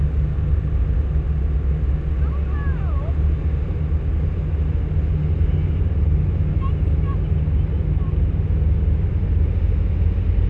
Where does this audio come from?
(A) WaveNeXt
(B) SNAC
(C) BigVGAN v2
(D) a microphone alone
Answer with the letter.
D